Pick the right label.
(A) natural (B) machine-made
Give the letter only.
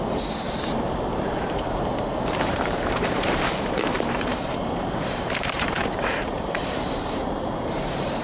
B